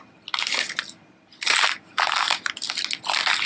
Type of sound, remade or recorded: recorded